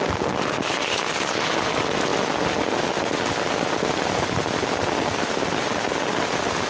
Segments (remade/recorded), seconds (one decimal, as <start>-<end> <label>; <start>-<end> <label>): 0.0-6.7 recorded